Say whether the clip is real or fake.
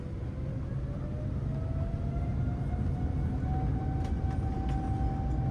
real